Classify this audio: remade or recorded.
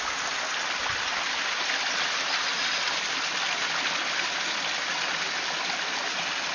recorded